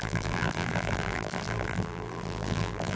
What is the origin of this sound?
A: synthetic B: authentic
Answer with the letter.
A